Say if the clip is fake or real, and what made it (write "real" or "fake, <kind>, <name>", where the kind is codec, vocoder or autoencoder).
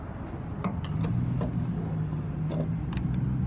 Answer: real